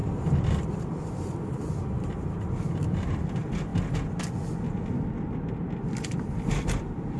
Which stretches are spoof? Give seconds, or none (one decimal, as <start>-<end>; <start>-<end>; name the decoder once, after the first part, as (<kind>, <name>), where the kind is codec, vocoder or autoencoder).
0.0-3.7 (vocoder, BigVGAN v2); 6.8-7.2